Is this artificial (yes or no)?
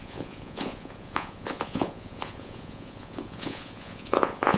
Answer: yes